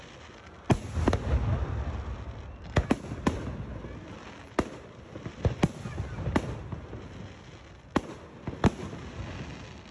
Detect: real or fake real